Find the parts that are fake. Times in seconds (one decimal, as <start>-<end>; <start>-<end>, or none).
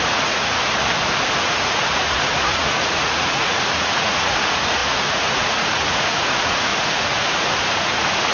0.0-0.6; 1.4-8.3